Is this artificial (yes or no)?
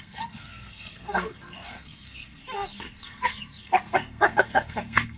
yes